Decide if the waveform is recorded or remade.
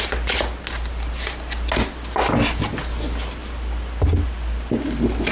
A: recorded